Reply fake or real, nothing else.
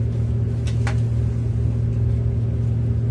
real